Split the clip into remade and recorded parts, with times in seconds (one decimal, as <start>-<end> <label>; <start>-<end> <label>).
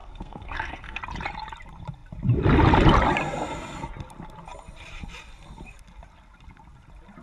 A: 0.0-1.0 remade; 1.0-7.2 recorded